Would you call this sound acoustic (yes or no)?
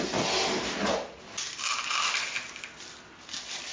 yes